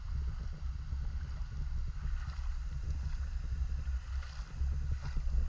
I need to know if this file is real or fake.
real